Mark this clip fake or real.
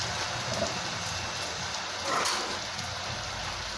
real